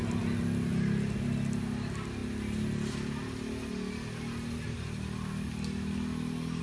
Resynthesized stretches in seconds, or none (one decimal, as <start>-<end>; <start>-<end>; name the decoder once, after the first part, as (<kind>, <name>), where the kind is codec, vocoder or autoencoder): none